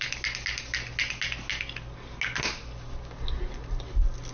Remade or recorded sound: recorded